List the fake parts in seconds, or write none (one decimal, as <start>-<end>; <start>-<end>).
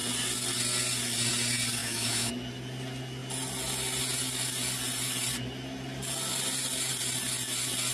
1.8-2.3